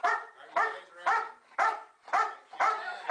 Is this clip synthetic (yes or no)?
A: no